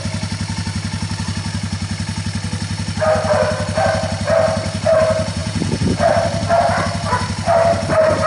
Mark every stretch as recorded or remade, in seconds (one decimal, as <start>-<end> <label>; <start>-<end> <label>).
0.0-5.4 recorded; 5.4-6.1 remade; 6.1-8.3 recorded